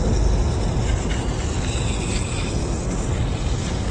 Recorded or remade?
recorded